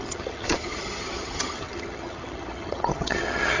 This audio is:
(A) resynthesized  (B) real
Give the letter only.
A